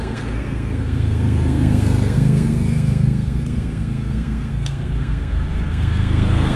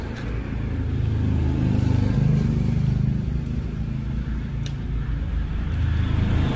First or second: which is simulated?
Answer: first